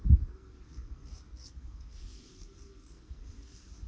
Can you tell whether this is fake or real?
fake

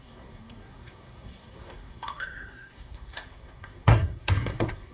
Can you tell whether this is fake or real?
fake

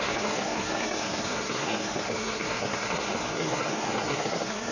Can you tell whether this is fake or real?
fake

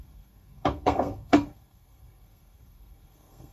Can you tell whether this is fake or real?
fake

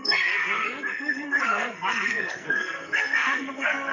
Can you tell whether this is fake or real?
fake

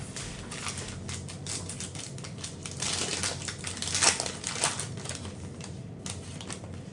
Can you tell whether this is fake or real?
real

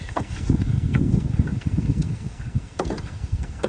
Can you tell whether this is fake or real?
fake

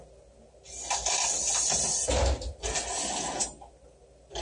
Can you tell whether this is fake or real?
real